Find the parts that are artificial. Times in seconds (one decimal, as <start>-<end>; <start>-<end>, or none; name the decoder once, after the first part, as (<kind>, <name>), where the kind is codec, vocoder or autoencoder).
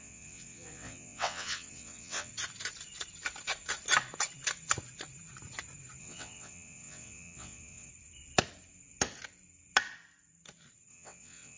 0.0-2.3 (vocoder, WaveNeXt); 6.0-7.9; 10.9-11.6